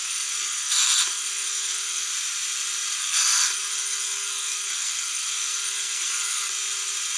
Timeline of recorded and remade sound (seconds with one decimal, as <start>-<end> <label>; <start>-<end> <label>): 0.0-2.1 remade; 2.1-3.0 recorded; 3.0-6.5 remade; 6.5-7.2 recorded